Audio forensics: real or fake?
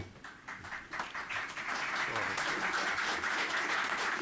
real